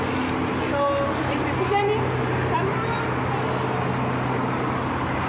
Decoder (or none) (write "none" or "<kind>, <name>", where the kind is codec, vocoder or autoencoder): none